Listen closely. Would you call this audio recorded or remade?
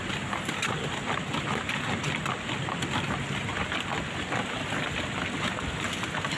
recorded